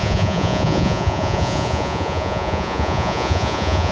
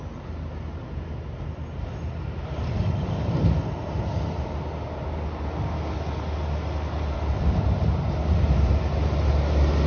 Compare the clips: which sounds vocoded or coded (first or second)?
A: first